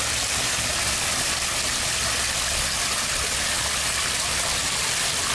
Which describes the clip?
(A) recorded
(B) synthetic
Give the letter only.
A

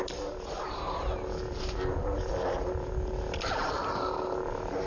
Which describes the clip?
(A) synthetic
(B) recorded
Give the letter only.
B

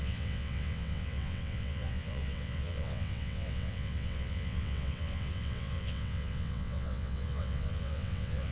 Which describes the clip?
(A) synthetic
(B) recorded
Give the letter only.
A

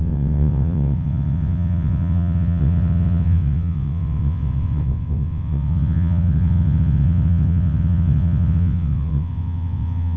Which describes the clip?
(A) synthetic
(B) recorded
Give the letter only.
A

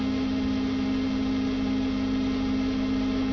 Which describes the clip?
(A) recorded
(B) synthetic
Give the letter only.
A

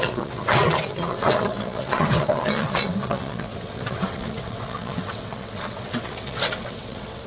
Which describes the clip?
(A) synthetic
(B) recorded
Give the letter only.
A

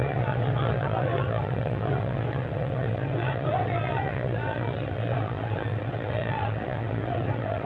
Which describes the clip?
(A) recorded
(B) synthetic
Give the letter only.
B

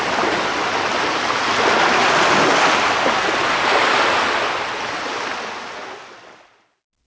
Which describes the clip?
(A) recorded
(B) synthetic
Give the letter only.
A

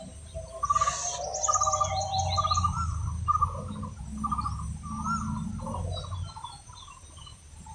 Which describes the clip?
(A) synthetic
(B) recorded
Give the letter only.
B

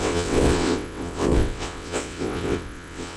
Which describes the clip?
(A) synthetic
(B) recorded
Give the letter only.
A